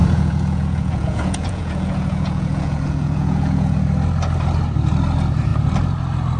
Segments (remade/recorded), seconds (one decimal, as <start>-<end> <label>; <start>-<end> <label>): 0.0-3.8 remade; 3.8-6.4 recorded